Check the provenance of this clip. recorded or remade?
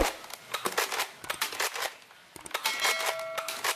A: recorded